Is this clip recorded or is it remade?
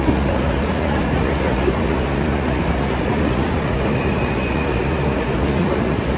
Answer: remade